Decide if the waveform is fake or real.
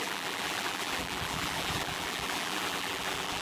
fake